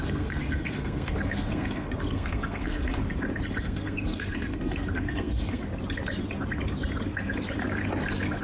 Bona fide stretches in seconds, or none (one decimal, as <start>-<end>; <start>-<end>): 3.0-3.6; 5.7-8.4